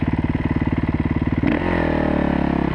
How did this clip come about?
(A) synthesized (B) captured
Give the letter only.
B